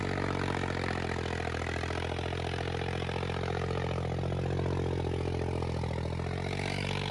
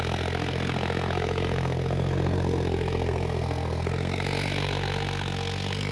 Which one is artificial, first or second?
second